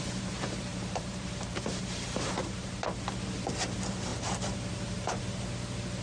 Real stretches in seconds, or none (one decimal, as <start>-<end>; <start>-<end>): 0.0-0.7; 2.7-4.1; 5.2-6.0

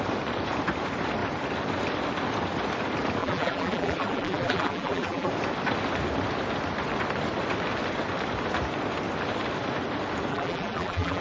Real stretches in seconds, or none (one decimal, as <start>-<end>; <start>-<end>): 0.0-3.2; 5.3-10.3

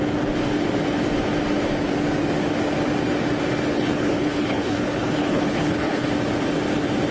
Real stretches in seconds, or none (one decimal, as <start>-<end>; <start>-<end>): 0.0-3.7; 6.1-7.1

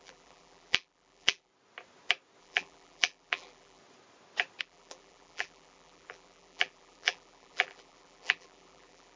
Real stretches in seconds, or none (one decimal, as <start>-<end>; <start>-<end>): 1.5-2.4; 3.8-4.6

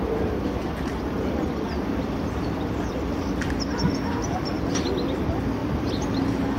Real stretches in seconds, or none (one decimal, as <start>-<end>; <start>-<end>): 2.0-5.6

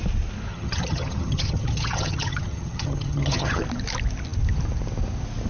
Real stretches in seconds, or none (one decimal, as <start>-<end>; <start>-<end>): 0.0-0.5; 3.6-5.5